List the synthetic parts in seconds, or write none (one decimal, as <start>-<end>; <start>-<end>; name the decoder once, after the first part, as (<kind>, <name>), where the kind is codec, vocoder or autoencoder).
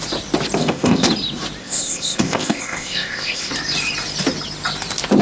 0.6-1.1 (codec, ZipCodec); 1.6-3.5